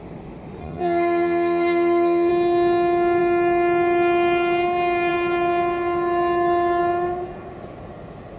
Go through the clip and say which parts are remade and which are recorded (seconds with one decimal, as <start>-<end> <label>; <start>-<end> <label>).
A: 0.0-0.6 recorded; 0.6-2.3 remade; 2.3-8.4 recorded